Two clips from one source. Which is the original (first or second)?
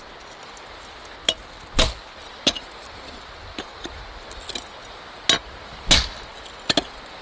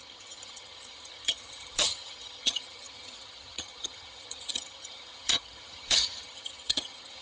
first